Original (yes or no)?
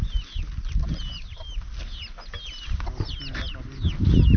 yes